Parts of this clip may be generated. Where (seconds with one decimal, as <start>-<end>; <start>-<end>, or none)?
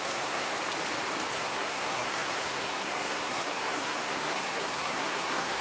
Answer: 0.0-0.5; 1.3-5.6